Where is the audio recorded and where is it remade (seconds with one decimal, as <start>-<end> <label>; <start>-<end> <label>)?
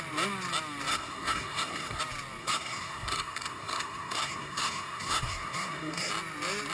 0.0-0.9 recorded; 0.9-2.0 remade; 2.0-2.4 recorded; 2.4-6.1 remade; 6.1-6.7 recorded